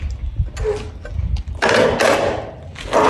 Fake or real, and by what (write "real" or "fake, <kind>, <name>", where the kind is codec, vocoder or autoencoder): real